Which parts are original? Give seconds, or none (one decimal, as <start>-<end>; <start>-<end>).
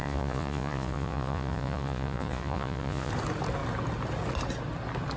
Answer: 3.1-5.2